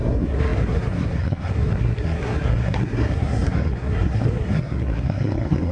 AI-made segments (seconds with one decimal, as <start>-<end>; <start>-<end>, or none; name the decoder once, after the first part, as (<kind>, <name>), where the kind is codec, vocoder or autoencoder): 0.0-5.7 (codec, SNAC)